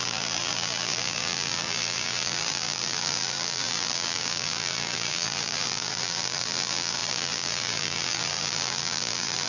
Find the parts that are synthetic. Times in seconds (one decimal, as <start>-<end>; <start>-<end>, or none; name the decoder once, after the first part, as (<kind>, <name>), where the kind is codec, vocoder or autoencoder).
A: 0.0-9.5 (vocoder, BigVGAN v2)